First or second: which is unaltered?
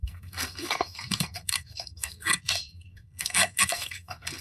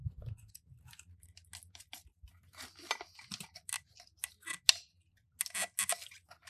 second